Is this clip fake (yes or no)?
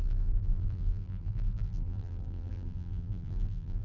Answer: yes